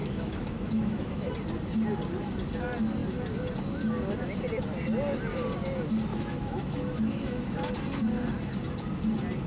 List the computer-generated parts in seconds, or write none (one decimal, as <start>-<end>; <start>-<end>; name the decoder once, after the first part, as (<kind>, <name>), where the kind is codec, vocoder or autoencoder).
0.0-1.3 (autoencoder, DAC-VAE); 6.1-7.7